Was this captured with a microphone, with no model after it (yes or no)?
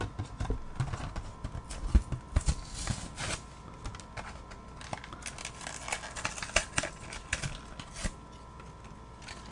yes